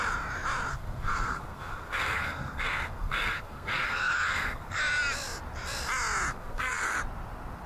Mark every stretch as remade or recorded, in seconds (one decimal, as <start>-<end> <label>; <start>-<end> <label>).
0.0-0.7 recorded; 0.7-4.8 remade; 4.8-6.3 recorded; 6.3-7.0 remade; 7.0-7.7 recorded